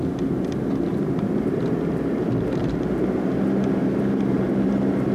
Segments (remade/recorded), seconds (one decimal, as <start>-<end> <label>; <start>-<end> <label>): 0.0-0.9 recorded; 0.9-1.6 remade; 1.6-2.6 recorded; 2.6-3.3 remade; 3.3-3.8 recorded; 3.8-5.1 remade